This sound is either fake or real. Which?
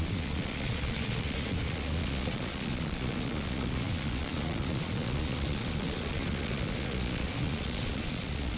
fake